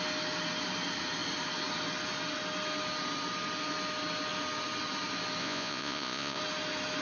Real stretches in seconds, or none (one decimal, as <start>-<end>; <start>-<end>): 0.0-5.4; 6.4-7.0